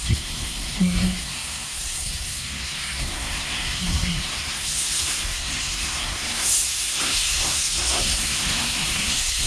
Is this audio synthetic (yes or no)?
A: yes